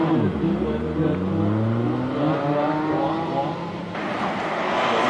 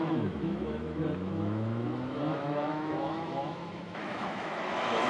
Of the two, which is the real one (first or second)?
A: first